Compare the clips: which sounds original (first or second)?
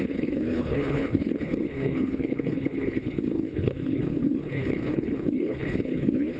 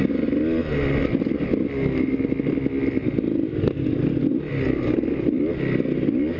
second